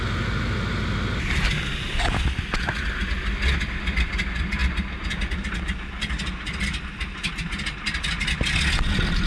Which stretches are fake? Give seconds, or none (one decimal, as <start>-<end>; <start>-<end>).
none